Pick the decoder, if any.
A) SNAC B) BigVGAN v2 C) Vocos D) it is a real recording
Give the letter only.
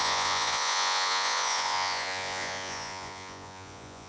C